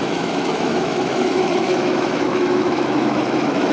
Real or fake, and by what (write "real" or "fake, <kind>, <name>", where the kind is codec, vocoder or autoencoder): fake, autoencoder, DAC-VAE